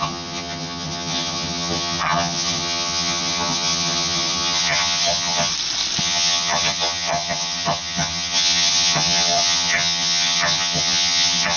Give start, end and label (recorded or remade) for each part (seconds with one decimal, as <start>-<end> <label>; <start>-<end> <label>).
0.0-5.5 remade; 5.5-6.0 recorded; 6.0-11.6 remade